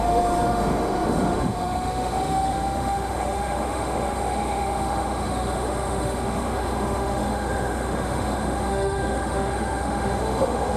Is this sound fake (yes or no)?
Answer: yes